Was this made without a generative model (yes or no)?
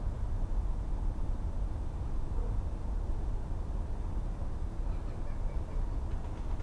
yes